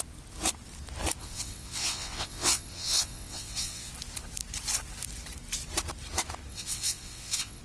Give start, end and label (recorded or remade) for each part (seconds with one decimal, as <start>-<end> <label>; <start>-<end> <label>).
0.0-1.2 recorded; 1.2-3.9 remade; 3.9-6.5 recorded; 6.5-7.6 remade